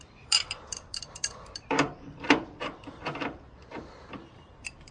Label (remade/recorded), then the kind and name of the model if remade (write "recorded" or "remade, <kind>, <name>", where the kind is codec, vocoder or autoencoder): remade, vocoder, BigVGAN v2